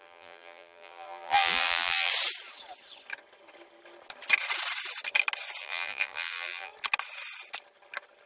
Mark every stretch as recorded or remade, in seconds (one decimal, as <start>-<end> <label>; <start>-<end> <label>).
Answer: 0.0-2.1 remade; 2.1-5.6 recorded; 5.6-6.7 remade; 6.7-8.3 recorded